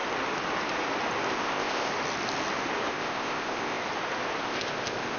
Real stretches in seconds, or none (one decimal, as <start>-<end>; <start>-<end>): 0.0-1.3; 1.9-2.9; 3.8-4.4